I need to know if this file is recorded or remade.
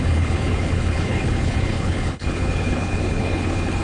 remade